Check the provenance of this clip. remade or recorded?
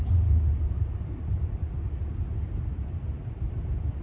recorded